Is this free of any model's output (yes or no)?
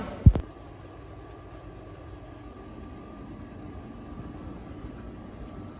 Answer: yes